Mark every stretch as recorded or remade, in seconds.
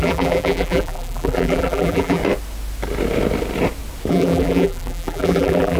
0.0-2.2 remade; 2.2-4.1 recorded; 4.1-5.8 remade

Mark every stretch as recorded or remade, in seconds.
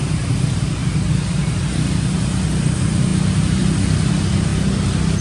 0.0-4.5 recorded; 4.5-5.2 remade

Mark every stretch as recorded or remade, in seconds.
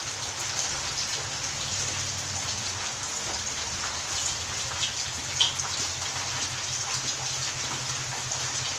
0.0-8.8 recorded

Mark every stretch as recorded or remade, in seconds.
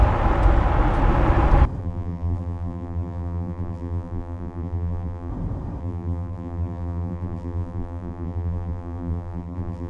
0.0-1.8 recorded; 1.8-5.3 remade; 5.3-5.8 recorded; 5.8-9.9 remade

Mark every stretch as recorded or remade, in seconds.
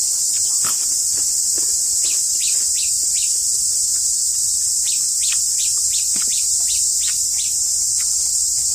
0.0-3.0 recorded; 3.0-5.6 remade; 5.6-6.2 recorded; 6.2-8.7 remade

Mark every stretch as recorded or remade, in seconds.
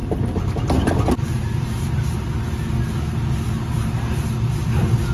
0.0-5.1 recorded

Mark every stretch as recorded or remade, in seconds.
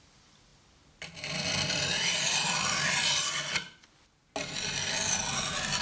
0.0-5.8 recorded